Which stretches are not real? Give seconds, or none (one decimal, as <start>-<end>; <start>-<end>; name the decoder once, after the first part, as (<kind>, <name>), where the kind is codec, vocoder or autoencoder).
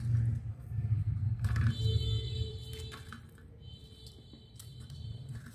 0.5-1.6 (codec, SNAC)